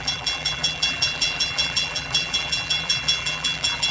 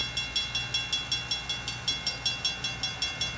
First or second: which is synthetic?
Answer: first